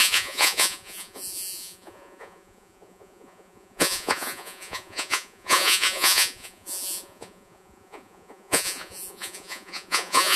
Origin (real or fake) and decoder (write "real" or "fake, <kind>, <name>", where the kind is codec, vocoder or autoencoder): fake, vocoder, Vocos